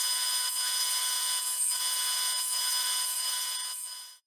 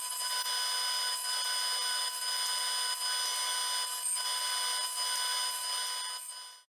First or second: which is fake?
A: first